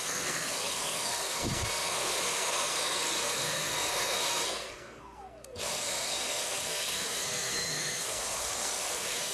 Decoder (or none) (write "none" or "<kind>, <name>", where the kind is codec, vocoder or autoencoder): codec, SNAC